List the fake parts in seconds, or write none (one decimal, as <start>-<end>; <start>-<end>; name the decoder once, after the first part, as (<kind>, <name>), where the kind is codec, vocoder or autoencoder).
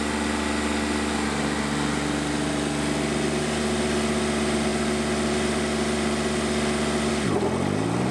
none